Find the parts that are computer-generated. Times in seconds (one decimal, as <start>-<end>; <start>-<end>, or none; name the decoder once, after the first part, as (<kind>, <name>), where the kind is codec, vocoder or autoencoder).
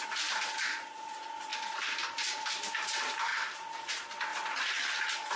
none